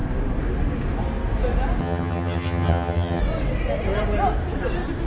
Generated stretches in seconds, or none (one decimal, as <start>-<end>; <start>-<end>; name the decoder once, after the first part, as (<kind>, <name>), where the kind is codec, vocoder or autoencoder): 1.8-3.2 (vocoder, HiFi-GAN)